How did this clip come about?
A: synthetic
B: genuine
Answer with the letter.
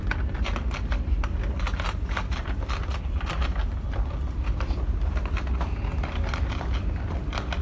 B